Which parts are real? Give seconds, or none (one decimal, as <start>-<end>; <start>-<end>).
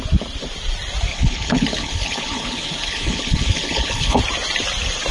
0.0-1.1; 4.2-5.1